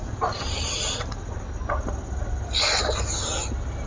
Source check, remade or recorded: recorded